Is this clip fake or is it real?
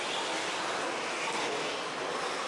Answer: real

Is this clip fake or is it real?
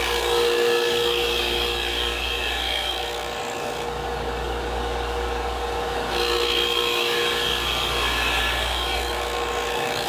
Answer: fake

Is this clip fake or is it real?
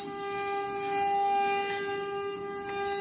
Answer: real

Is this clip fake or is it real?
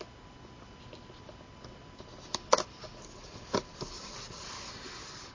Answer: real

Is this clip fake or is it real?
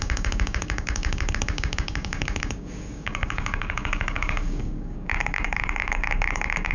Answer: fake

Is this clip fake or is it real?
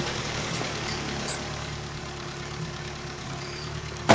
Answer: fake